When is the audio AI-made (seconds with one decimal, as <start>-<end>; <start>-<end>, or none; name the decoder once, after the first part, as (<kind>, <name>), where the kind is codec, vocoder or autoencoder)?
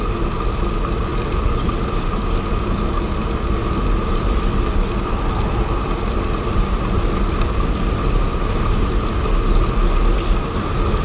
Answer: none